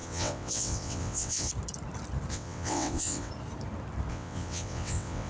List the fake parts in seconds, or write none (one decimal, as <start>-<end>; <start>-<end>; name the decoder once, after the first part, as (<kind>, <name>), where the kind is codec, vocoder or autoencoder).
0.0-1.5 (vocoder, WaveNeXt); 2.3-3.3; 4.1-5.3